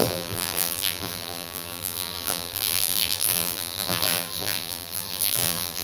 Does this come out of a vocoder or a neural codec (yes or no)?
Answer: yes